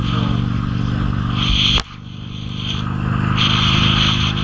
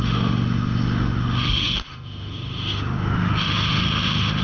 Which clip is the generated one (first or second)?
second